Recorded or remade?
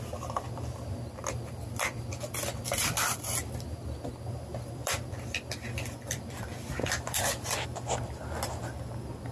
remade